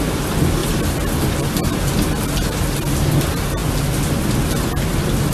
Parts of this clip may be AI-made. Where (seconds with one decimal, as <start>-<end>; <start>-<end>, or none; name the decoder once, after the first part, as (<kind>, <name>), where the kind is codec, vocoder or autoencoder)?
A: none